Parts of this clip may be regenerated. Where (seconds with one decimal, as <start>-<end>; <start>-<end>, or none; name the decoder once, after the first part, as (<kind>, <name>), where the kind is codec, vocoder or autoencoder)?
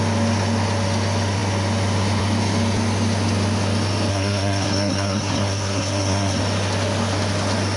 4.1-6.4 (codec, SNAC)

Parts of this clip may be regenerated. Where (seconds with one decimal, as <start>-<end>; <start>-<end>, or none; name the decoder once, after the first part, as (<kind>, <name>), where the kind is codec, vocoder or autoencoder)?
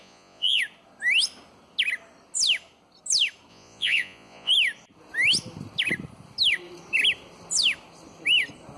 0.0-0.6 (vocoder, Vocos); 3.5-4.5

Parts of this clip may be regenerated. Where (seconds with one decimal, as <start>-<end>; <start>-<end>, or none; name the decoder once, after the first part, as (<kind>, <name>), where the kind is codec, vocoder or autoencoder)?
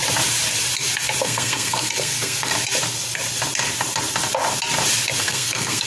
1.2-2.5 (codec, SNAC); 5.2-5.9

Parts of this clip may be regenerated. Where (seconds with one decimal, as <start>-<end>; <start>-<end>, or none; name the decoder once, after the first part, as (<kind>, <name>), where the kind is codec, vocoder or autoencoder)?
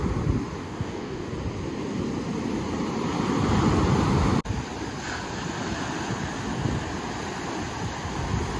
0.6-1.3 (codec, DAC)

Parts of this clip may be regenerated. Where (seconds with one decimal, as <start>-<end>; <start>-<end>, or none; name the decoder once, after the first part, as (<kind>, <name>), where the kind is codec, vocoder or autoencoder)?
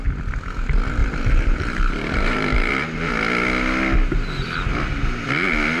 1.0-2.7 (vocoder, BigVGAN v2)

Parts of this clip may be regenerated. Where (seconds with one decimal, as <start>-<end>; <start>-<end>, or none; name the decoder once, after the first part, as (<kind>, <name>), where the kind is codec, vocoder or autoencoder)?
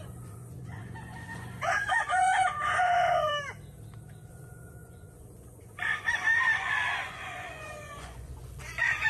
0.0-3.3 (vocoder, Vocos); 4.3-9.1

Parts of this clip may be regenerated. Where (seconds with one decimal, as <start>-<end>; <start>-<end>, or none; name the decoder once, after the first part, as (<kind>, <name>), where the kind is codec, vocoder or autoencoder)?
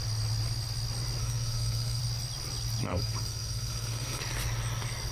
1.2-2.0 (codec, SNAC); 2.9-4.2